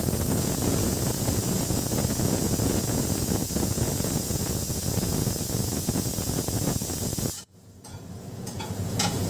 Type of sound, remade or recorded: remade